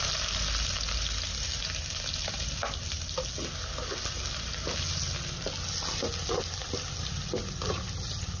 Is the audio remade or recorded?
recorded